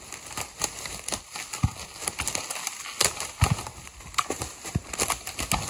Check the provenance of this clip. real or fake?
real